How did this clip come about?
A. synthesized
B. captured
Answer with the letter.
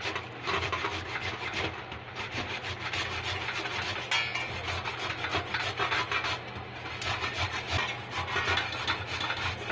B